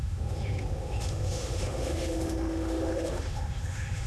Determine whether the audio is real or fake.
fake